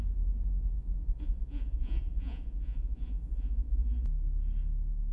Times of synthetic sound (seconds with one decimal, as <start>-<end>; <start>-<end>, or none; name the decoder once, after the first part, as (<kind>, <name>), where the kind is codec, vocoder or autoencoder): 0.8-3.9 (vocoder, Vocos)